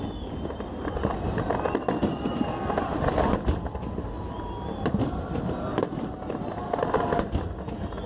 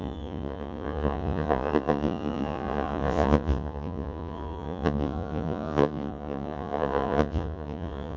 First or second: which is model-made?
second